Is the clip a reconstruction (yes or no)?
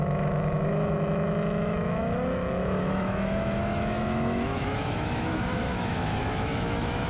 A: yes